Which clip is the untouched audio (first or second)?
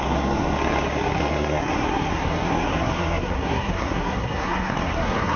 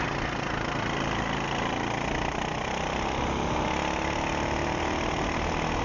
second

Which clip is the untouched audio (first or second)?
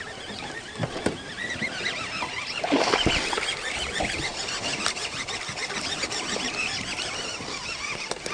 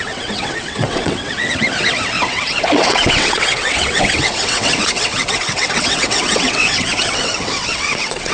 first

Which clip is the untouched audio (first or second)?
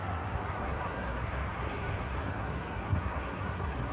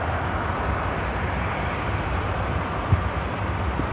second